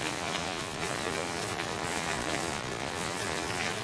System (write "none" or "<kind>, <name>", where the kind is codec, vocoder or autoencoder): vocoder, Vocos